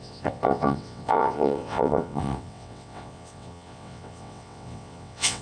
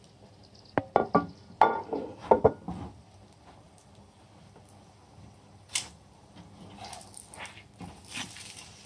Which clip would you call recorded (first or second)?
second